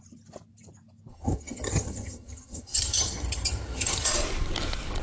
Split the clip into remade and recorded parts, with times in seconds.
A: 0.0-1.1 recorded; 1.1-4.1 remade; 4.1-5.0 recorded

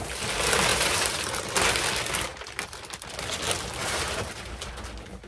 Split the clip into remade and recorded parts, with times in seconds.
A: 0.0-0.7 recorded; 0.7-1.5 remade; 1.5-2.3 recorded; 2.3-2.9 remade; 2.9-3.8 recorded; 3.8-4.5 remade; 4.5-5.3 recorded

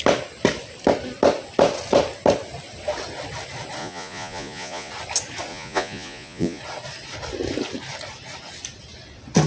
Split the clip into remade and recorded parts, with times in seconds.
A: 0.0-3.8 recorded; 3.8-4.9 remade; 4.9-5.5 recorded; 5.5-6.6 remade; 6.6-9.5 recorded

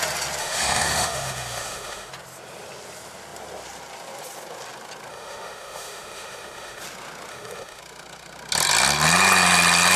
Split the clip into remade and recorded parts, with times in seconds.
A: 0.0-0.4 recorded; 0.4-2.1 remade; 2.1-5.1 recorded; 5.1-6.8 remade; 6.8-7.3 recorded; 7.3-7.8 remade; 7.8-10.0 recorded

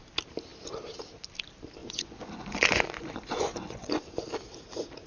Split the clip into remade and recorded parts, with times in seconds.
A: 0.0-1.8 recorded; 1.8-4.3 remade; 4.3-5.1 recorded

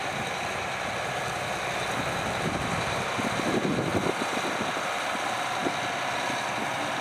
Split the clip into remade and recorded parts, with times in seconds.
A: 0.0-7.0 recorded